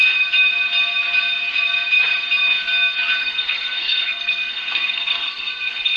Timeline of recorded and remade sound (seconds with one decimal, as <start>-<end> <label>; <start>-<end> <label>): 0.0-3.2 recorded; 3.2-6.0 remade